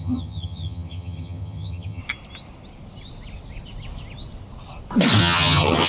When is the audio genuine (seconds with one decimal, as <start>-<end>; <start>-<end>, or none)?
2.0-5.2